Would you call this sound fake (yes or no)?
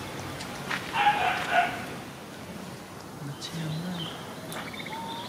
no